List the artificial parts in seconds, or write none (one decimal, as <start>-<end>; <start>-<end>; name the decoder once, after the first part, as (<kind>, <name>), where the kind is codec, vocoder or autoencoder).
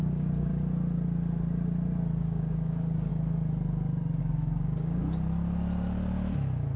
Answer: 0.0-0.5 (codec, DAC); 2.2-3.1; 4.2-5.0